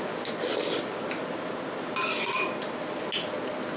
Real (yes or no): yes